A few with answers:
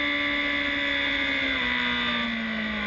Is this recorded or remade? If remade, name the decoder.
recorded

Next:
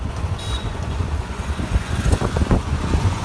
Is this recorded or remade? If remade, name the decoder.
remade, vocoder, Vocos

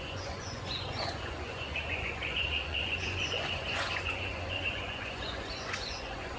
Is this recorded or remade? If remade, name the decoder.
remade, vocoder, Vocos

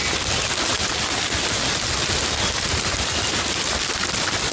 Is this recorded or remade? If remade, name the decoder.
recorded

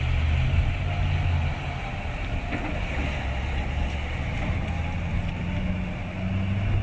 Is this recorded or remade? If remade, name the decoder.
recorded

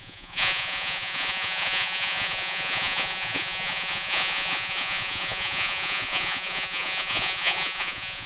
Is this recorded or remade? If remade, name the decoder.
remade, vocoder, Vocos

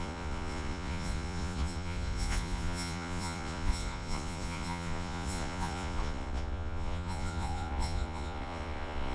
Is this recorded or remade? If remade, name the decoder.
remade, vocoder, Vocos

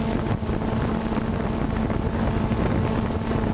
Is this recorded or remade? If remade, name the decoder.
recorded